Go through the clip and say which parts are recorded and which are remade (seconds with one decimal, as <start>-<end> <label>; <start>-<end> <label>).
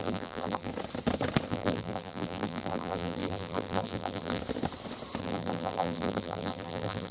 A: 0.0-0.7 remade; 0.7-1.5 recorded; 1.5-4.4 remade; 4.4-5.2 recorded; 5.2-7.1 remade